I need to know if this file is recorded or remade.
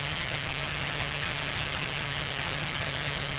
remade